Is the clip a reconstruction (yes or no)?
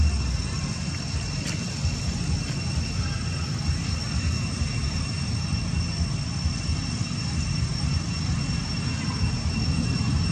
no